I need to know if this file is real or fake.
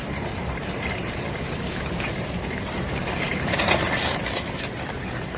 fake